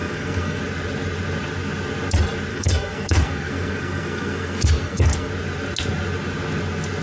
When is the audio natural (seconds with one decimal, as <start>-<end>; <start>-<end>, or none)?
0.6-2.5; 5.3-7.0